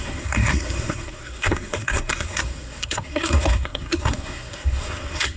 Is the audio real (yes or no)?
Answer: no